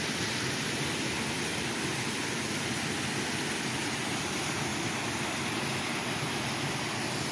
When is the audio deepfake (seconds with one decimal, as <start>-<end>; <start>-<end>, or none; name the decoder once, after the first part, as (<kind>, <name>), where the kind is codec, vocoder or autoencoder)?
none